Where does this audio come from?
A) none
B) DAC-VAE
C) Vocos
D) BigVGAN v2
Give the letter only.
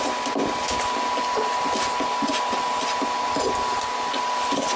A